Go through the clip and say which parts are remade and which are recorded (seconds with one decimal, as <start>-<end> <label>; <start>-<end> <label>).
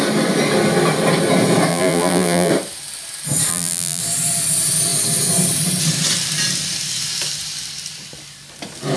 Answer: 0.0-1.7 recorded; 1.7-2.5 remade; 2.5-3.5 recorded; 3.5-4.0 remade; 4.0-9.0 recorded